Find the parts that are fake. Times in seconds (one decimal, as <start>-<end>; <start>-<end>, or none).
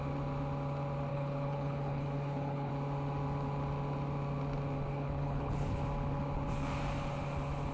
1.1-2.7; 4.9-5.8